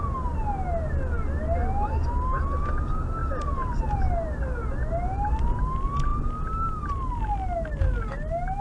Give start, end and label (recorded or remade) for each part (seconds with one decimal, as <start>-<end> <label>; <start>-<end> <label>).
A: 0.0-8.6 recorded